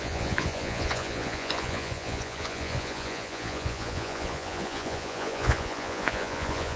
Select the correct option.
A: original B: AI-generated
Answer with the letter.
B